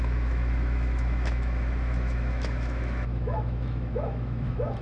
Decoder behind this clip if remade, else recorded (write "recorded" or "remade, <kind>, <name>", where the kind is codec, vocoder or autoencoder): remade, autoencoder, DAC-VAE